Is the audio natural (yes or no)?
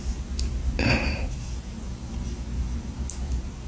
yes